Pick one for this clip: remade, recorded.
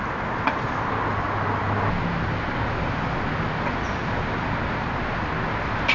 recorded